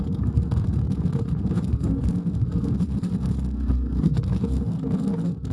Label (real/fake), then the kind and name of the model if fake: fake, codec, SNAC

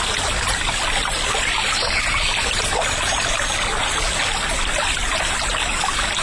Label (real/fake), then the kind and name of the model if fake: real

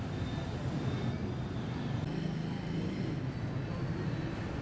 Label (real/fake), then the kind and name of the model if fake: real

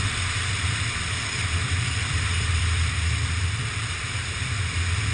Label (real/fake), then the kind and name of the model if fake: fake, vocoder, BigVGAN v2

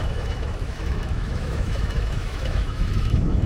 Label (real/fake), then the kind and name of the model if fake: fake, autoencoder, DAC-VAE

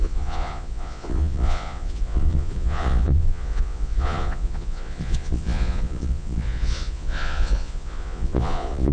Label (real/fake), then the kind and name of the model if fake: fake, vocoder, Vocos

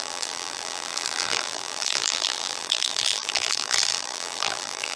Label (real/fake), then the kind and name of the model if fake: fake, vocoder, BigVGAN v2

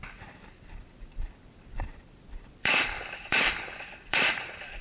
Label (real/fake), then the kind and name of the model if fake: fake, vocoder, BigVGAN v2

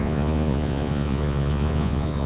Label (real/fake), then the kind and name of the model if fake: fake, vocoder, Vocos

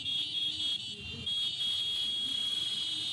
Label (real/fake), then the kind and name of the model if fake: real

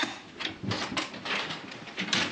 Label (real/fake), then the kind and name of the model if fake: real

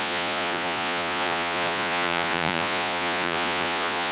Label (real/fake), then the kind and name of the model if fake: fake, vocoder, Vocos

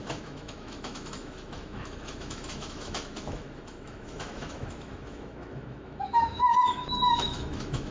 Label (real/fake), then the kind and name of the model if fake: fake, autoencoder, DAC-VAE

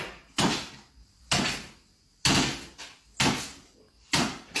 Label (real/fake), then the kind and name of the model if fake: real